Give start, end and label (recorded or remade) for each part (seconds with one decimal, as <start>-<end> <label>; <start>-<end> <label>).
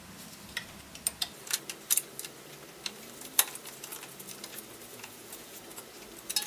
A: 0.0-4.9 recorded; 4.9-5.6 remade; 5.6-6.5 recorded